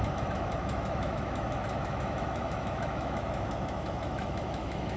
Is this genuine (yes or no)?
no